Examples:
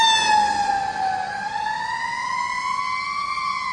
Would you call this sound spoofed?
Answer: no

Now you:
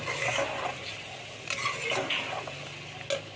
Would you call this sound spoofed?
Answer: no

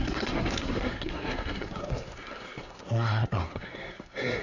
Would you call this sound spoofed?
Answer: yes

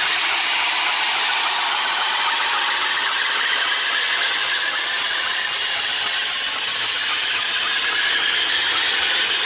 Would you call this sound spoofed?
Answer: no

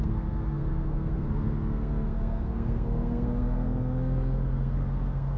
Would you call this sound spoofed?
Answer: yes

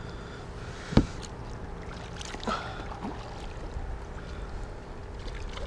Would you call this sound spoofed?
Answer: no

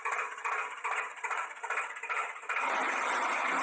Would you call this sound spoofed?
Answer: no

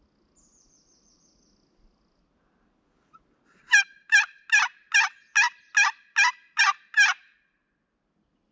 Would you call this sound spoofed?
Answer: no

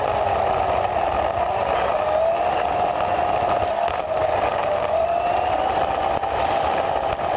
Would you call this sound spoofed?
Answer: no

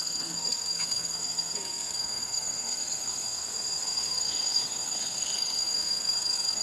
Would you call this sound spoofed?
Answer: yes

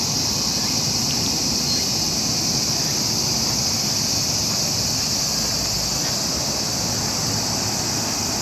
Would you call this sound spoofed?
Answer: no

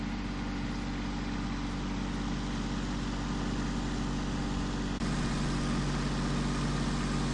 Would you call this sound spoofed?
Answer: no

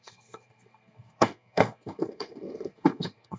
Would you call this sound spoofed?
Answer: yes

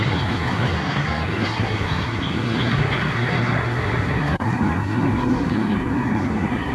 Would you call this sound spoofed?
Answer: yes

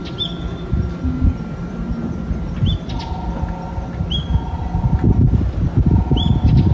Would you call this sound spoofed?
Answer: no